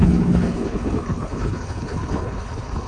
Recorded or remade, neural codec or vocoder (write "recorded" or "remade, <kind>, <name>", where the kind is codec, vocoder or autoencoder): remade, codec, HILCodec